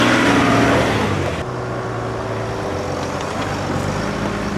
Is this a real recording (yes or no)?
yes